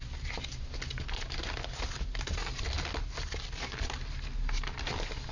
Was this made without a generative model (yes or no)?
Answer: yes